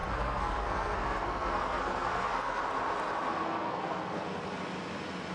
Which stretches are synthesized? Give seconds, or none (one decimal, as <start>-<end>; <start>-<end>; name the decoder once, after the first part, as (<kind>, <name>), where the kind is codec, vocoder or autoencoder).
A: 0.0-2.6 (codec, SNAC); 3.3-4.4